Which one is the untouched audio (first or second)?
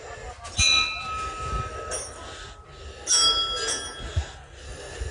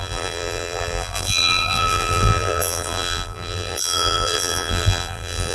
first